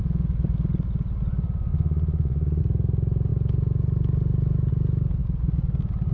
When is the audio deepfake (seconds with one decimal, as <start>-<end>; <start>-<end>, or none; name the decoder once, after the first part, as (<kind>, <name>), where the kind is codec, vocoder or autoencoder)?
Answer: 1.7-2.6 (vocoder, Vocos)